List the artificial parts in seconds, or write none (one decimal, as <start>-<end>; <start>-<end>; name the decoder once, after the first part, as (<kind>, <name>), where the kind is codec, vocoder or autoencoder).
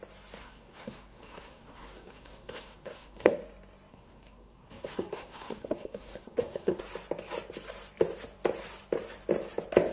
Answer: 0.4-3.3 (codec, SNAC); 3.9-6.8